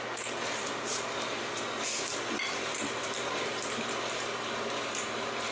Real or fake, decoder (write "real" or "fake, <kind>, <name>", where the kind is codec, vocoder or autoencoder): fake, vocoder, BigVGAN v2